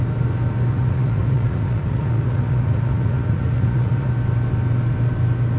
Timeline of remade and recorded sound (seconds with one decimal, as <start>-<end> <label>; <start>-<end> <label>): 0.0-0.7 recorded; 0.7-4.1 remade; 4.1-5.6 recorded